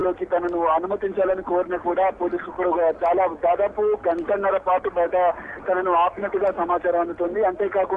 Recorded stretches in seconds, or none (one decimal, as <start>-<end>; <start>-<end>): 0.0-8.0